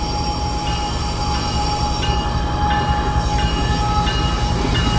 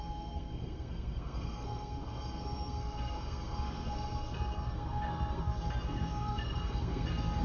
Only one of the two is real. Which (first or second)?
first